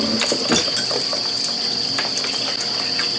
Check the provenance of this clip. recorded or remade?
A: recorded